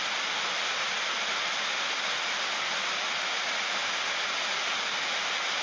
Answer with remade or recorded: recorded